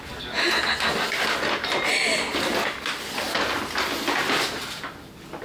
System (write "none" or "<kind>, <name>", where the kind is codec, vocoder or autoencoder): none